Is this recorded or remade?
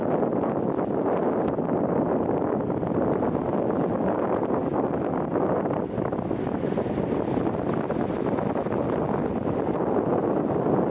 recorded